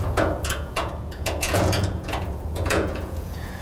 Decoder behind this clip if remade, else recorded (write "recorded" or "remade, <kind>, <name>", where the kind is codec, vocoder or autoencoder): remade, vocoder, Vocos